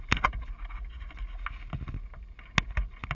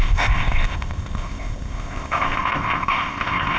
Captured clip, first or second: first